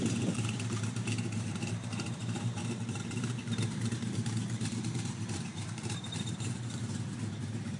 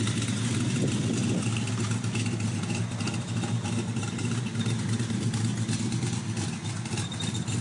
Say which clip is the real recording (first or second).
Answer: second